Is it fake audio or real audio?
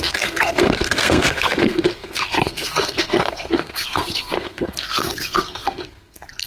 fake